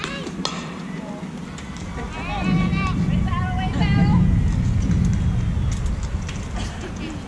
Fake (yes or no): no